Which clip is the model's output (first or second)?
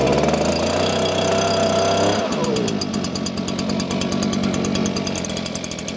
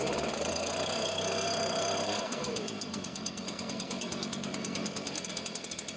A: second